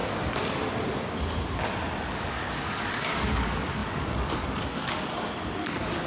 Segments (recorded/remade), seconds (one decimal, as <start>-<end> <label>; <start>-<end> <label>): 0.0-2.0 recorded; 2.0-6.1 remade